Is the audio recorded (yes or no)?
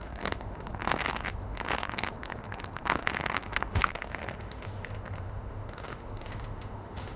no